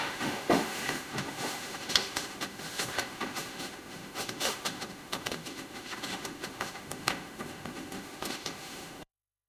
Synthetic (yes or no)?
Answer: yes